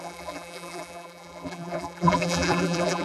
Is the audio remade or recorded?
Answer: remade